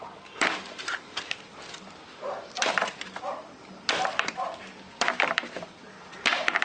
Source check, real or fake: fake